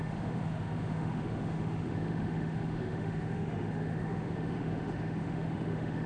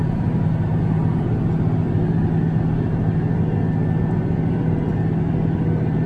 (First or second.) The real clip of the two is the second